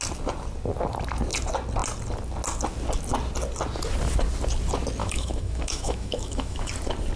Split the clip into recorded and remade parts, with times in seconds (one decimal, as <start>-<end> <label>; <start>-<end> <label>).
0.0-5.0 recorded; 5.0-6.7 remade; 6.7-7.2 recorded